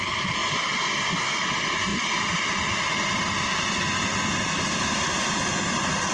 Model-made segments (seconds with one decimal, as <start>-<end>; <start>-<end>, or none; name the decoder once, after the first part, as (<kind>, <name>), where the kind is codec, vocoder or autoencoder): none